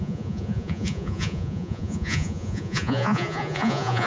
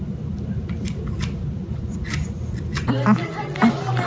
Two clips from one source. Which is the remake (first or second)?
first